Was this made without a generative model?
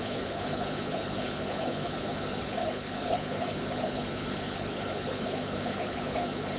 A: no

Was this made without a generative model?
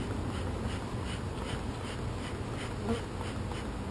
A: yes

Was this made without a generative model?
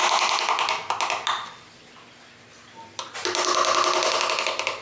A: yes